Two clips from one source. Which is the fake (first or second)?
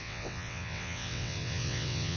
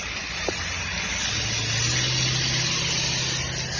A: first